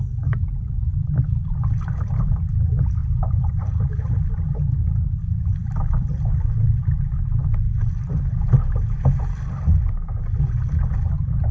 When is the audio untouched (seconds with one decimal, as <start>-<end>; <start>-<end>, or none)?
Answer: 0.0-0.9; 1.6-3.0; 3.5-5.6; 6.7-11.5